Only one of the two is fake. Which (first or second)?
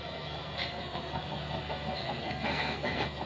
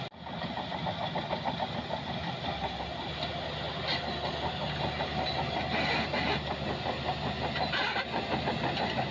first